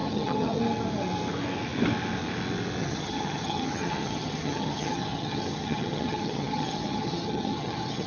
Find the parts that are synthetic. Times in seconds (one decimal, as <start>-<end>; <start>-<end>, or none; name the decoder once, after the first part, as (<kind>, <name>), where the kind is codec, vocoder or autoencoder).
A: 0.0-0.6 (vocoder, HiFi-GAN); 2.8-8.1